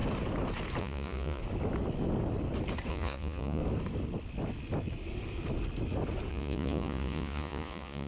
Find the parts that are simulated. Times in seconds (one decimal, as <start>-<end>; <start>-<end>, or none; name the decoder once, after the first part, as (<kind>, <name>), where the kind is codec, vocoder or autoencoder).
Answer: 0.8-1.4 (vocoder, Vocos); 2.9-3.6; 6.3-8.1